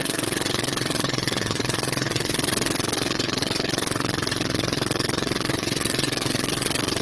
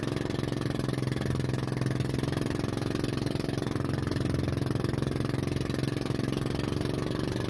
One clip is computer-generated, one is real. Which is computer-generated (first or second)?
first